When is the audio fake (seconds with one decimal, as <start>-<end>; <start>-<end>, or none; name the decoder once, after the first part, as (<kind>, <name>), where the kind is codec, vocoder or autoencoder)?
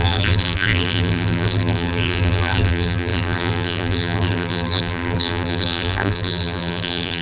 0.0-7.2 (vocoder, BigVGAN v2)